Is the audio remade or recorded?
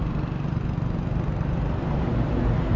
recorded